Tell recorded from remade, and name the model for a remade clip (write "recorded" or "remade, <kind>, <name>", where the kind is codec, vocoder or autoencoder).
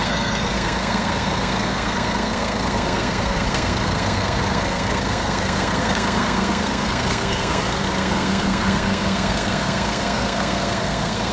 remade, codec, SNAC